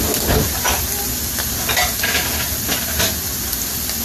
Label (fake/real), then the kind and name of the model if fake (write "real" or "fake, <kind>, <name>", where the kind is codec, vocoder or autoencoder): real